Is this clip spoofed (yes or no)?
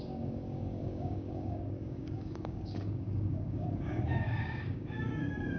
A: yes